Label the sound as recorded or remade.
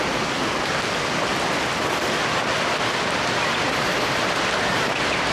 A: recorded